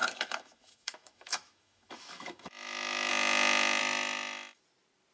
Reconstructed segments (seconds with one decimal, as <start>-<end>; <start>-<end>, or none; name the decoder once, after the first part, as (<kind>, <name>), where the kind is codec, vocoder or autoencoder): 0.0-3.1 (autoencoder, DAC-VAE); 3.8-4.6